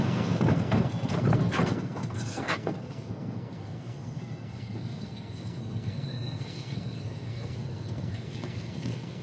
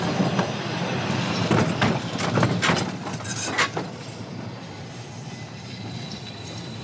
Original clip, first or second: second